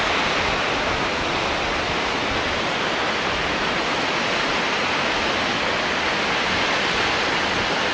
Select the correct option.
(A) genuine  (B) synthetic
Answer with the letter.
A